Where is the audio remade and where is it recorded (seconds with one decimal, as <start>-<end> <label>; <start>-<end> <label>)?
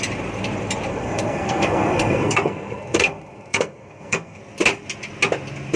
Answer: 0.0-0.9 recorded; 0.9-4.4 remade; 4.4-5.8 recorded